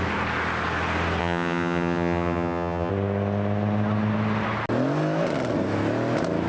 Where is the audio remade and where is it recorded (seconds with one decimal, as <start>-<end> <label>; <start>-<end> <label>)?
0.0-1.2 recorded; 1.2-2.9 remade; 2.9-6.5 recorded